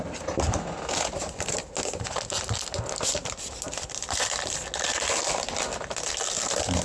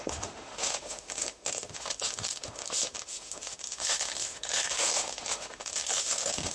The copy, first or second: second